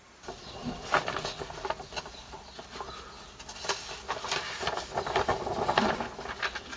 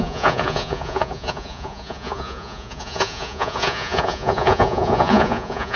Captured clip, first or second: first